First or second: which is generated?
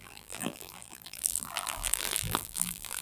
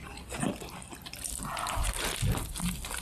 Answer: first